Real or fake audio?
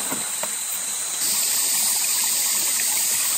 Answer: fake